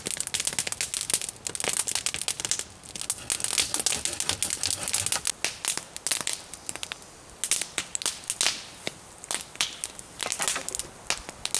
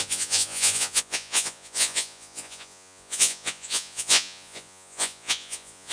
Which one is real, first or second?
first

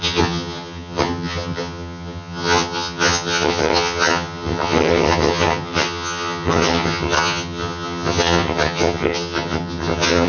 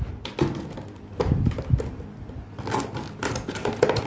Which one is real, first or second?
second